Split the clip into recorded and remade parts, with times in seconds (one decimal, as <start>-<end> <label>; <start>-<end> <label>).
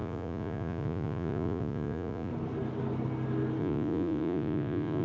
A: 0.0-2.3 remade; 2.3-3.6 recorded; 3.6-5.0 remade